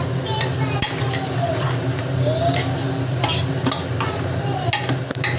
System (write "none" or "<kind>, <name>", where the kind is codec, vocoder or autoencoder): none